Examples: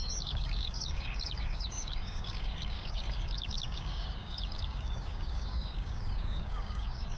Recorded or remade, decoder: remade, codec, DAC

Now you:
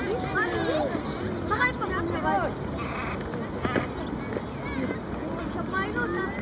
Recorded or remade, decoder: recorded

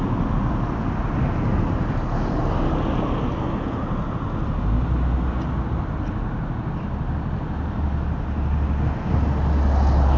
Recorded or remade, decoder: recorded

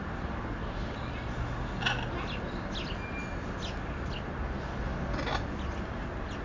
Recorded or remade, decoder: recorded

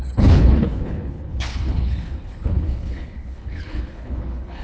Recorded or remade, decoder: remade, codec, HILCodec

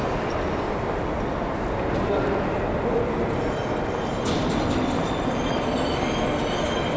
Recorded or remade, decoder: recorded